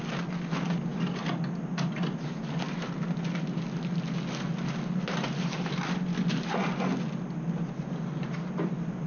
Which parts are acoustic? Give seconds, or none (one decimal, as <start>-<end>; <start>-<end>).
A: 0.0-9.1